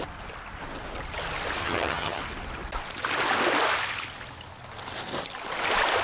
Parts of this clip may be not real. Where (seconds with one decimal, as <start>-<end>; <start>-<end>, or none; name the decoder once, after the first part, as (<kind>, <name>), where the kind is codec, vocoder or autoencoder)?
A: 1.6-2.2 (vocoder, HiFi-GAN)